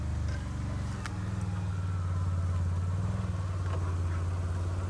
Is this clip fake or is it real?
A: real